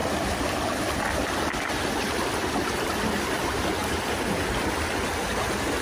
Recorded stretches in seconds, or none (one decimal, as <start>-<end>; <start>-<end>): 3.2-5.8